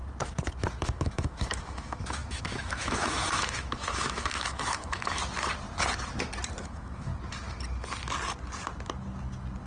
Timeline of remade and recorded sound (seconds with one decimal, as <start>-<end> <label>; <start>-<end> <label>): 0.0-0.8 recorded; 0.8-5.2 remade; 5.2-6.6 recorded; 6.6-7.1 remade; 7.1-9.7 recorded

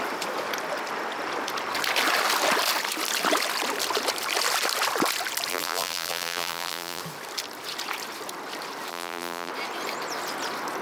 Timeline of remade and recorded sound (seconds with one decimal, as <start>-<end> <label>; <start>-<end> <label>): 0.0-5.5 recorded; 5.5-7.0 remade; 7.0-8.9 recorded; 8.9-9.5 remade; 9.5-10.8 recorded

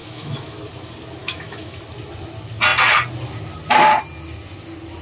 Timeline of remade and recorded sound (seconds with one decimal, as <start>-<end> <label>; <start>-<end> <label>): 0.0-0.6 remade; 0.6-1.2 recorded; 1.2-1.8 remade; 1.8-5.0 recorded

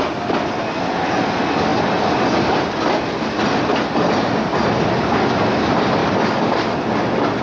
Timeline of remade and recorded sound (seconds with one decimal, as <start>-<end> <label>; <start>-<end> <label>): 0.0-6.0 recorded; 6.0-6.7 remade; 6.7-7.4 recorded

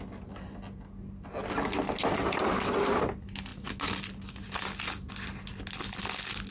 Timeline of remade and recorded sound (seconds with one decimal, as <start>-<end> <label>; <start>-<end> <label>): 0.0-6.5 recorded

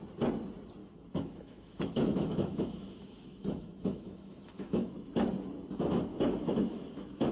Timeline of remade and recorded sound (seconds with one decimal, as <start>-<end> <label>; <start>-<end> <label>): 0.0-0.8 recorded; 0.8-5.1 remade; 5.1-6.1 recorded; 6.1-7.3 remade